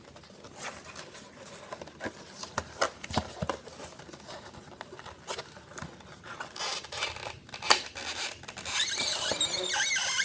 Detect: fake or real real